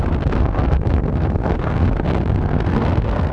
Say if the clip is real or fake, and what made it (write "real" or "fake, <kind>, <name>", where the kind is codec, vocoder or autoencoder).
fake, codec, SNAC